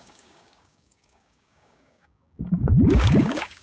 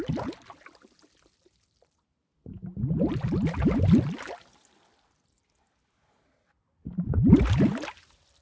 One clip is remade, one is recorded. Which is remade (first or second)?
first